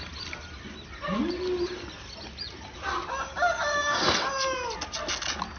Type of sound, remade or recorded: recorded